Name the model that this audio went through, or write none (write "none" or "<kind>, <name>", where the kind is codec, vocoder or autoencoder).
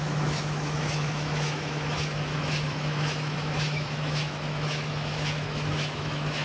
autoencoder, DAC-VAE